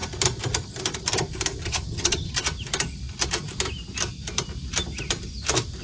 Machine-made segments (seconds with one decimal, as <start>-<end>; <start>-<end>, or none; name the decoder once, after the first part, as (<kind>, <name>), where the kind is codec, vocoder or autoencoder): 1.6-2.3 (vocoder, HiFi-GAN)